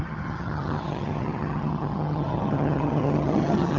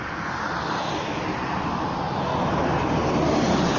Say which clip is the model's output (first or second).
first